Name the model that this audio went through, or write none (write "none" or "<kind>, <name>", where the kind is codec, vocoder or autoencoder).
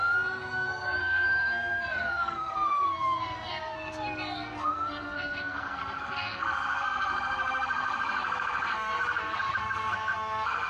codec, SNAC